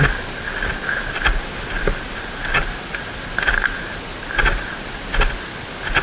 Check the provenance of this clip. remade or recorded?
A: recorded